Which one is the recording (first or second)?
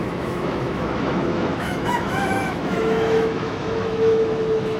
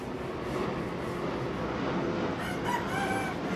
second